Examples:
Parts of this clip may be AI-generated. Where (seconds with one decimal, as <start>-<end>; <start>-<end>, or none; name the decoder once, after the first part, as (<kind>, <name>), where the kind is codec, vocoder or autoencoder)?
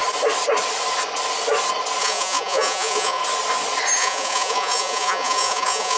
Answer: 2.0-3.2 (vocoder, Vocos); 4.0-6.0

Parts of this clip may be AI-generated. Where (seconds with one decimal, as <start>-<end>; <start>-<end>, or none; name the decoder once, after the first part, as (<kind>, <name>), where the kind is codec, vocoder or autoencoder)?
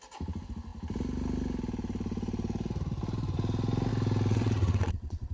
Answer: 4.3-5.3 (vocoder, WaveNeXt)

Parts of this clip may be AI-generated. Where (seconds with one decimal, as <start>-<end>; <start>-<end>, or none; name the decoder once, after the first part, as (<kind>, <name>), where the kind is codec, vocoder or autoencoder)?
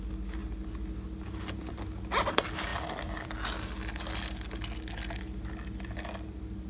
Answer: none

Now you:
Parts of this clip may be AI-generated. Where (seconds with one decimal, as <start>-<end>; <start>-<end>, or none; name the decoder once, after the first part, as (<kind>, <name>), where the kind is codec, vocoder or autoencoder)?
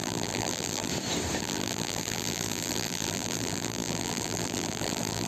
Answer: 0.0-0.9 (vocoder, BigVGAN v2); 1.4-5.3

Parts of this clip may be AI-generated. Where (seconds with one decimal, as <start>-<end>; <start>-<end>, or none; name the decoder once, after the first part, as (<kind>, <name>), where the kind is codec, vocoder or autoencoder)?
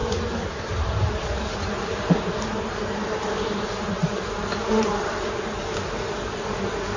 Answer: 0.7-7.0 (vocoder, BigVGAN v2)